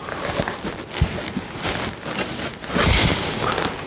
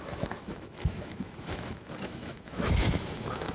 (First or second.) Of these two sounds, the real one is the first